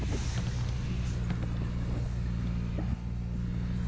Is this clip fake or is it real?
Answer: real